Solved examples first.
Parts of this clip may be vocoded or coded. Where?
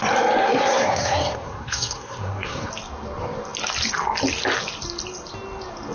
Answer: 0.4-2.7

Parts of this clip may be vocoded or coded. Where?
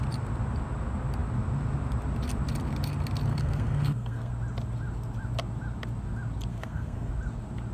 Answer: 3.3-4.3; 6.5-7.1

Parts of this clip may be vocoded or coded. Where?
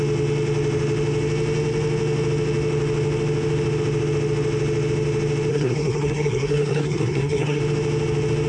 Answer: 5.5-7.6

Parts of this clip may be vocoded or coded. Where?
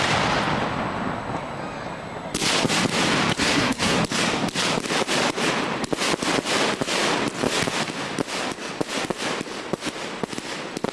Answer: 3.3-4.0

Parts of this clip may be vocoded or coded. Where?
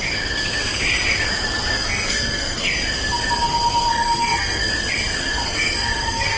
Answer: 1.7-2.7; 3.9-4.7; 5.2-6.4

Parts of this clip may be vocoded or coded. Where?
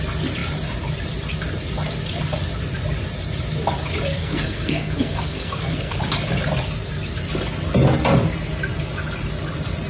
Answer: 4.2-6.0